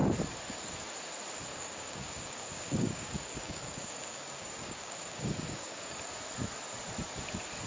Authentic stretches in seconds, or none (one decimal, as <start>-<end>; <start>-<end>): 0.0-1.5; 6.0-7.7